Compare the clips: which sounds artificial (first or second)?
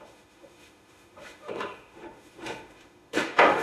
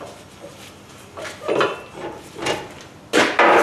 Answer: first